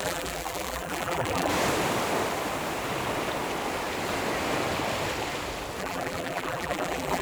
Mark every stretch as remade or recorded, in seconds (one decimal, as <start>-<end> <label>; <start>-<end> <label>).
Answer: 0.0-1.5 remade; 1.5-5.8 recorded; 5.8-7.2 remade